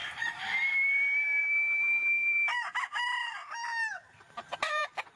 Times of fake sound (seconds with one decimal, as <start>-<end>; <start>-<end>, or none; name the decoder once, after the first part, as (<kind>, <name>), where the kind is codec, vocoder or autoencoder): 0.0-1.4 (vocoder, BigVGAN v2); 4.5-5.2